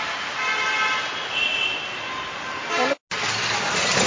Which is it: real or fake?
real